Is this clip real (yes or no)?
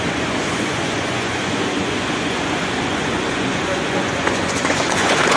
no